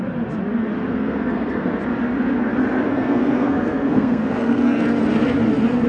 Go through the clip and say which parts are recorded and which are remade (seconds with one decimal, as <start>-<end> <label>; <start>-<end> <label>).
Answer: 0.0-0.9 recorded; 0.9-1.7 remade; 1.7-2.9 recorded; 2.9-4.8 remade; 4.8-5.9 recorded